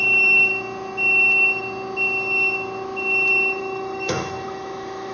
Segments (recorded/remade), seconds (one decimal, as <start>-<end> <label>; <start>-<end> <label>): 0.0-0.5 remade; 0.5-3.6 recorded; 3.6-5.1 remade